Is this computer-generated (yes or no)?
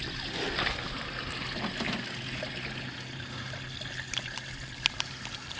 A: no